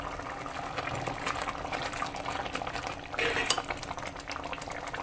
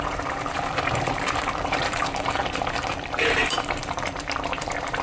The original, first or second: first